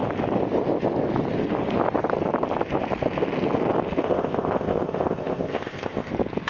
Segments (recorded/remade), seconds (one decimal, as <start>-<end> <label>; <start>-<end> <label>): 0.0-4.0 recorded; 4.0-6.1 remade; 6.1-6.5 recorded

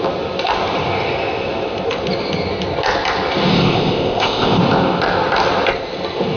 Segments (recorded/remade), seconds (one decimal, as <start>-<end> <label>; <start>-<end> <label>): 0.0-3.5 recorded; 3.5-4.6 remade; 4.6-6.4 recorded

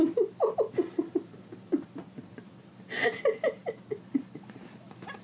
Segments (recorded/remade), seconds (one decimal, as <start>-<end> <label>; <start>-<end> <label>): 0.0-5.2 recorded

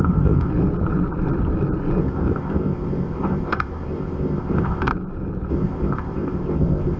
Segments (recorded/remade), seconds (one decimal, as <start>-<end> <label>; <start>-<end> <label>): 0.0-0.5 remade; 0.5-2.0 recorded; 2.0-4.9 remade; 4.9-5.5 recorded; 5.5-7.0 remade

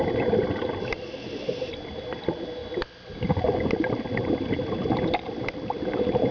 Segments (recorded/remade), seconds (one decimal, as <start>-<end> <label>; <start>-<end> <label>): 0.0-6.3 recorded

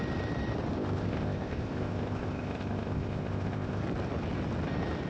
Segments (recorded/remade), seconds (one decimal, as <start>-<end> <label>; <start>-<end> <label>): 0.0-0.7 recorded; 0.7-3.8 remade; 3.8-5.1 recorded